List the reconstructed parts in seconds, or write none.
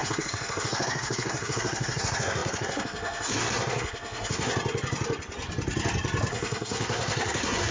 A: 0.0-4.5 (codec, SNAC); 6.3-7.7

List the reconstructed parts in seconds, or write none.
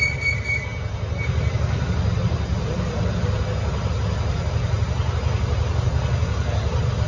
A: none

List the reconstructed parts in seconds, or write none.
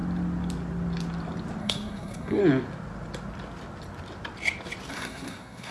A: 1.6-2.4 (codec, SNAC); 4.9-5.7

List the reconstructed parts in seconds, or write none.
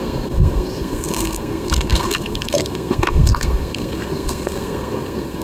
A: 0.0-5.4 (codec, SNAC)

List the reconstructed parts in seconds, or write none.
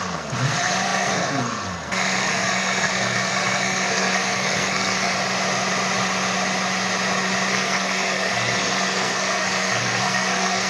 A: 0.0-5.1 (codec, SNAC); 7.5-10.7